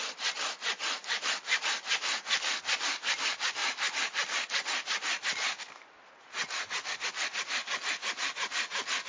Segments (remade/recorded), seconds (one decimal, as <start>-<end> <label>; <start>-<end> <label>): 0.0-9.1 recorded